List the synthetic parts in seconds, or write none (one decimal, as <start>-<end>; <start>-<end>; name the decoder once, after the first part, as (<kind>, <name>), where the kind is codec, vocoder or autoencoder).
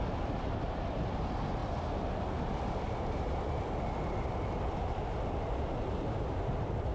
none